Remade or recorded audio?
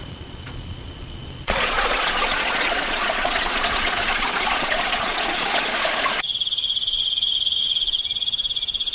remade